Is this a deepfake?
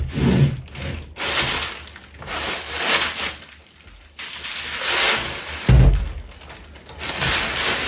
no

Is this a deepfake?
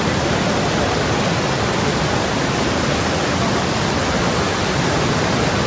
no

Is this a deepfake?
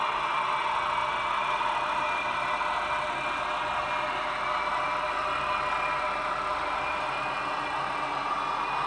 no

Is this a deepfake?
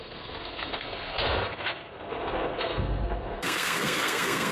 yes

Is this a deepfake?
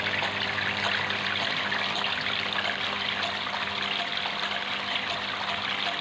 no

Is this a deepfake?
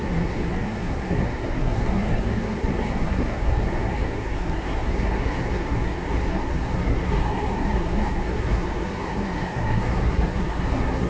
yes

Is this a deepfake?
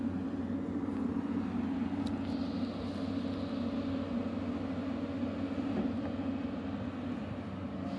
no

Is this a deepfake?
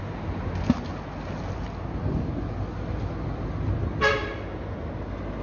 no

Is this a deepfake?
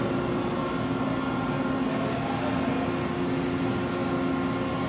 no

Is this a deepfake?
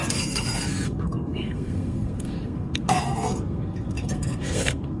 yes